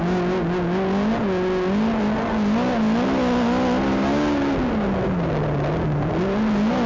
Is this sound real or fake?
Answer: real